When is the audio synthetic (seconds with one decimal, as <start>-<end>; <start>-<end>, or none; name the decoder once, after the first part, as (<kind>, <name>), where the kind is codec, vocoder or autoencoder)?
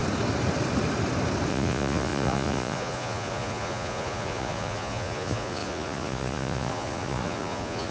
1.5-7.9 (vocoder, Vocos)